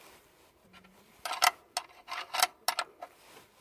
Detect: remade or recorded recorded